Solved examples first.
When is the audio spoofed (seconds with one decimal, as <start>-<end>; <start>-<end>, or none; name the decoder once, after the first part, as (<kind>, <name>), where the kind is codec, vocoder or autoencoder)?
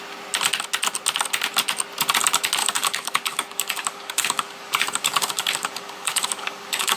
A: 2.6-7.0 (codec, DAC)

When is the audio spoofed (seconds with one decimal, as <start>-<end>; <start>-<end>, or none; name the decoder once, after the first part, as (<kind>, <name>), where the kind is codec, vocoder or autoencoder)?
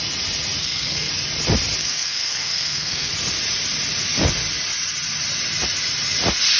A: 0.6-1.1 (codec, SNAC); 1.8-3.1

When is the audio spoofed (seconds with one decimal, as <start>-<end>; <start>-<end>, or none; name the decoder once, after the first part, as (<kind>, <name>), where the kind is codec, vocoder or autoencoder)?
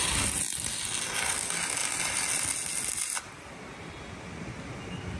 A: none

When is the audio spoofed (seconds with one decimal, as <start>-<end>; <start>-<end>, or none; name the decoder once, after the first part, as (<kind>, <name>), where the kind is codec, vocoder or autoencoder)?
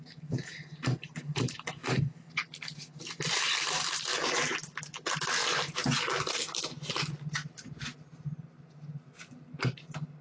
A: 5.4-6.5 (vocoder, BigVGAN v2)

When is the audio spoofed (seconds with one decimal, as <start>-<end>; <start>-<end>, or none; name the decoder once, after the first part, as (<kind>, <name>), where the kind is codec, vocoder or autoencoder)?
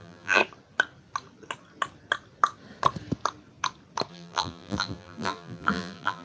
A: 0.0-0.4 (vocoder, BigVGAN v2); 4.1-6.2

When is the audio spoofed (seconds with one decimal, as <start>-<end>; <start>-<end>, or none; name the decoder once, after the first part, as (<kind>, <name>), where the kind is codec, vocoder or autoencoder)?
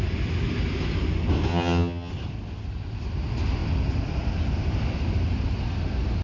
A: 1.5-2.1 (vocoder, HiFi-GAN)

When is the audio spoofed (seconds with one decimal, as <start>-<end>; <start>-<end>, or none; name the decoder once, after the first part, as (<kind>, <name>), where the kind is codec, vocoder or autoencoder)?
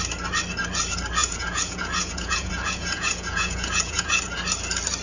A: 1.2-4.2 (vocoder, Vocos)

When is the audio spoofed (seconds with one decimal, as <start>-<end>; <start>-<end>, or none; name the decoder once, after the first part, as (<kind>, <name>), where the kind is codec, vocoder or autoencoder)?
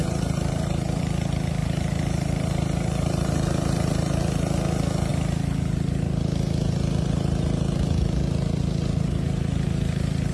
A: 0.0-1.0 (vocoder, BigVGAN v2); 1.6-4.2